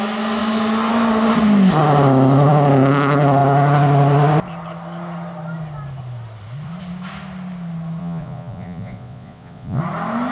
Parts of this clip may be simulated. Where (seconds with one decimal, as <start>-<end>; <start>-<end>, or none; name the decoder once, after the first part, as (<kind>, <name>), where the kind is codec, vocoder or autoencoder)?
8.0-9.8 (vocoder, Vocos)